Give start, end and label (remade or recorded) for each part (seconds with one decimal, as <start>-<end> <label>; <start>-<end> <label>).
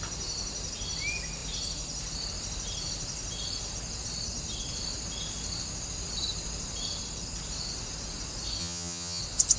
0.0-8.6 recorded; 8.6-9.2 remade; 9.2-9.6 recorded